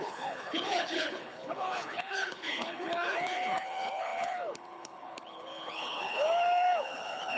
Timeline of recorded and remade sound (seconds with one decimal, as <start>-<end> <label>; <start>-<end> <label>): 0.0-7.4 remade